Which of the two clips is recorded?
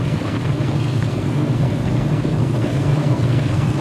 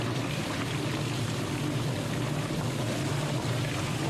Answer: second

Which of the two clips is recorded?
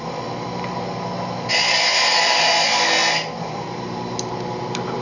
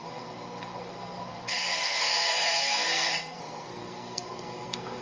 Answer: first